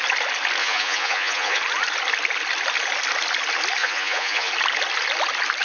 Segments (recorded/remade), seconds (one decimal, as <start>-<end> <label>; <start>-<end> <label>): 0.0-0.6 recorded; 0.6-1.6 remade; 1.6-3.8 recorded; 3.8-4.5 remade; 4.5-5.6 recorded